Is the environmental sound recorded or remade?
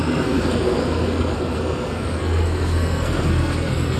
remade